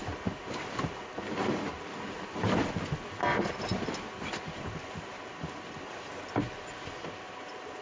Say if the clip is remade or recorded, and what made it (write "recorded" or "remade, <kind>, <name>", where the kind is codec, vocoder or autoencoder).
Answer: recorded